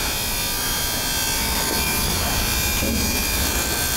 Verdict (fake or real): fake